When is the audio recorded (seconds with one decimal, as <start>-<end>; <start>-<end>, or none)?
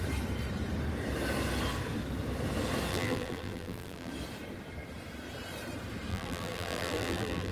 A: 0.0-2.9; 4.1-6.1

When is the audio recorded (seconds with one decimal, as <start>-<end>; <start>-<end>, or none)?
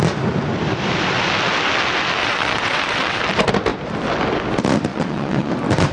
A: 0.0-2.2; 3.2-4.9; 5.5-5.9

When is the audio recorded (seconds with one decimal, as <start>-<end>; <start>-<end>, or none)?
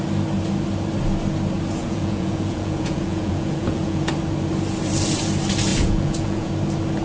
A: 0.0-1.8; 4.1-5.7; 6.5-7.0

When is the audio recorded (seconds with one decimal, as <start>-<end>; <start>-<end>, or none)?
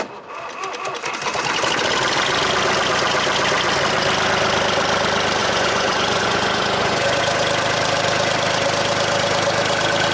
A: 0.0-5.4; 7.2-10.1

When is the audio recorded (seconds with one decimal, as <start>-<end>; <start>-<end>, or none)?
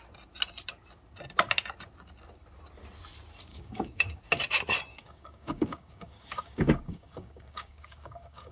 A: 0.0-3.5; 4.2-4.9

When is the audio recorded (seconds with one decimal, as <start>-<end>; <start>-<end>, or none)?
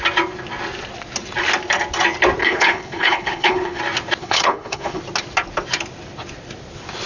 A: 0.0-2.4; 3.8-4.2; 5.0-7.1